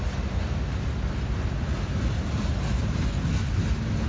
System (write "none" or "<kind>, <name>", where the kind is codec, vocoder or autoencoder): none